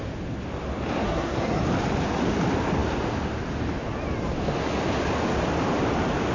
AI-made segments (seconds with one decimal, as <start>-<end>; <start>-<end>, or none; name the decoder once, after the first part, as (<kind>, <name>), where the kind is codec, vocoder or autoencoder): 1.0-1.6 (codec, SNAC)